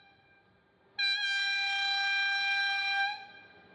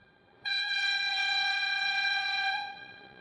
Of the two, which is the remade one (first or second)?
second